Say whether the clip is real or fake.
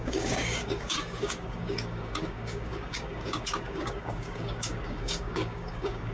fake